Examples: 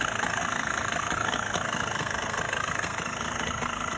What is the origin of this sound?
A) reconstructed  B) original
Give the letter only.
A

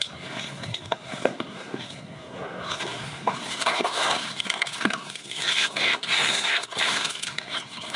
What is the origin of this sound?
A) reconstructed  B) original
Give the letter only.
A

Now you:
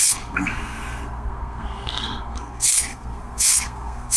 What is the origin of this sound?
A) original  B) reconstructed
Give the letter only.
B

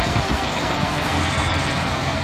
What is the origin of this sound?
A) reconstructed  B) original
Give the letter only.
A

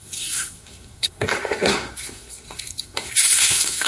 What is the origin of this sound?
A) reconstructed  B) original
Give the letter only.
A